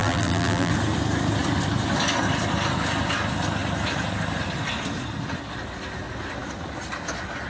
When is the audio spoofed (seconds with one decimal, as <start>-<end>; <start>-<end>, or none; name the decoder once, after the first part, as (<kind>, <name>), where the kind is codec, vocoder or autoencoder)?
0.0-0.7 (vocoder, BigVGAN v2)